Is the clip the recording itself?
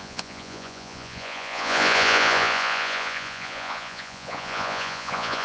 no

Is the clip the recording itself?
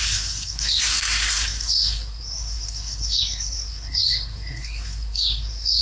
no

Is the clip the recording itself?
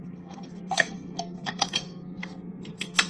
no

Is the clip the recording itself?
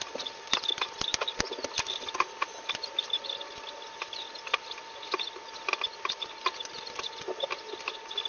yes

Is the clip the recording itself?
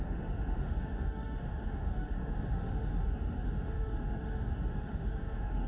no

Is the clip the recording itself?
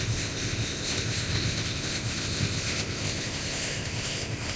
no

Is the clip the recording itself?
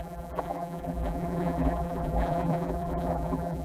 no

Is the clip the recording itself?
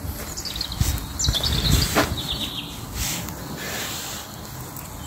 yes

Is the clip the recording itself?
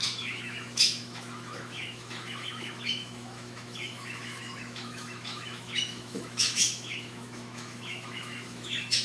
no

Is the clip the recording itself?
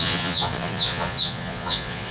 no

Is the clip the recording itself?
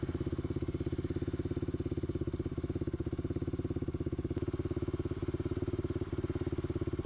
yes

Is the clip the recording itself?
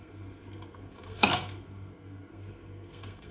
no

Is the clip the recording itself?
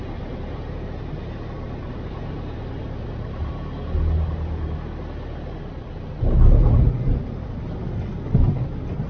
yes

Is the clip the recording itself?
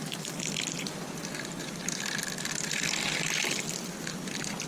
yes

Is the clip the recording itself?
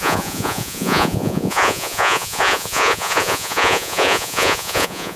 no